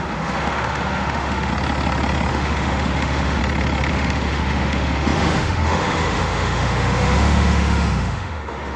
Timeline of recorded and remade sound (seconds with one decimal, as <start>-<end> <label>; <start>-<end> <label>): 0.0-1.5 remade; 1.5-2.3 recorded; 2.3-3.4 remade; 3.4-3.9 recorded; 3.9-8.8 remade